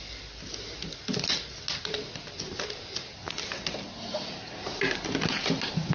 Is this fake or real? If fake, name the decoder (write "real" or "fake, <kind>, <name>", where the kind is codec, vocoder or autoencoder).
real